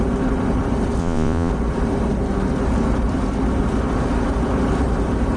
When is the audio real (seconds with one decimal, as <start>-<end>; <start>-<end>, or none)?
0.0-1.0; 1.5-5.4